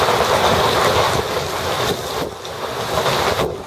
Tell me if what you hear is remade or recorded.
recorded